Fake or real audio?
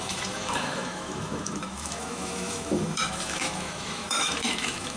fake